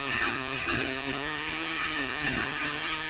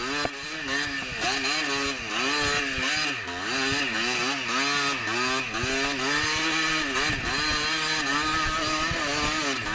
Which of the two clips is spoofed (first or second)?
first